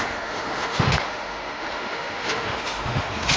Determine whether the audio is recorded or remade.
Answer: remade